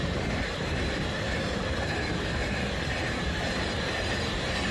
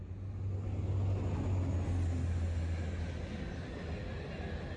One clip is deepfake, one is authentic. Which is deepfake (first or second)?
first